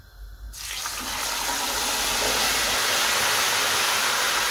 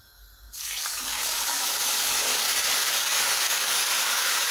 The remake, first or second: second